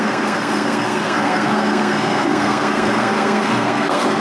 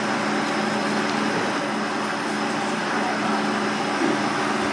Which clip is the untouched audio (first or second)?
second